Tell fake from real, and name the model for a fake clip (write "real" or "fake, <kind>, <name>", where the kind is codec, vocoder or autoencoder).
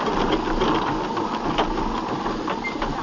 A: real